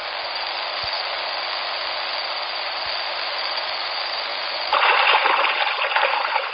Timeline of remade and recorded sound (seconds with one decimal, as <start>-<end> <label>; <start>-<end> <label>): 0.0-6.5 recorded